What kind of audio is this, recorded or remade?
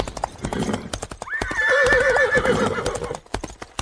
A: recorded